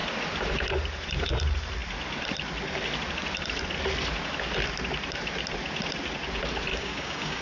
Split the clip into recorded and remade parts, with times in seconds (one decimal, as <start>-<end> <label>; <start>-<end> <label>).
0.0-6.7 recorded; 6.7-7.4 remade